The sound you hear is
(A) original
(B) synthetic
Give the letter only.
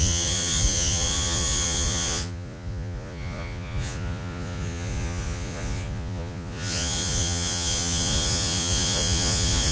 B